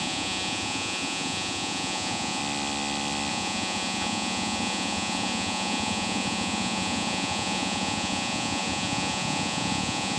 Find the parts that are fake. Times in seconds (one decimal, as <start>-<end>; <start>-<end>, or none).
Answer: 0.0-2.4; 3.3-10.2